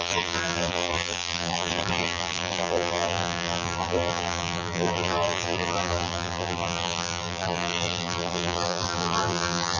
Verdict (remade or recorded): remade